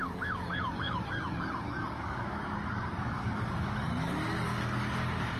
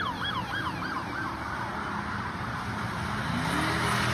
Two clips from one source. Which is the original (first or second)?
second